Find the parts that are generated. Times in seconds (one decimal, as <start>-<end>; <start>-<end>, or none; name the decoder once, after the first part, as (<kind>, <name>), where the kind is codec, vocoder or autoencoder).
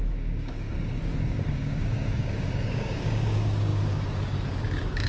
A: 0.0-5.1 (codec, DAC)